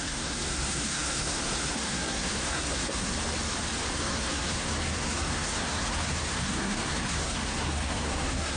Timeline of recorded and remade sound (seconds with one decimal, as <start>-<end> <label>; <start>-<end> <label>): 0.0-3.1 remade; 3.1-3.9 recorded; 3.9-8.6 remade